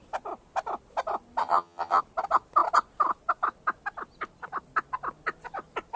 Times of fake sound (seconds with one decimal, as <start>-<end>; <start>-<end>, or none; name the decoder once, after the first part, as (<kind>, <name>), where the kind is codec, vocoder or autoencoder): 1.4-2.0 (vocoder, HiFi-GAN)